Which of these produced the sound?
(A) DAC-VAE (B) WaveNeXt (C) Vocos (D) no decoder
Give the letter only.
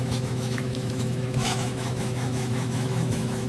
A